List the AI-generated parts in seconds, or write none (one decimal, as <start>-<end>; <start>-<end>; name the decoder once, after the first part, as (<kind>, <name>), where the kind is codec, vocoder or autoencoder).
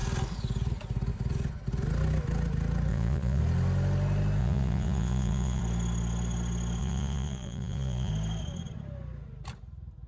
2.9-3.4 (vocoder, Vocos); 4.4-5.6; 6.8-8.1